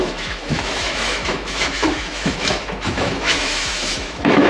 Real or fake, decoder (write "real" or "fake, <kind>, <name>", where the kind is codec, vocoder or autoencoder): fake, autoencoder, DAC-VAE